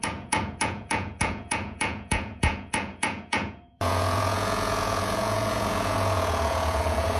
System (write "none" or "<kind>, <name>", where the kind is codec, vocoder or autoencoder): vocoder, Vocos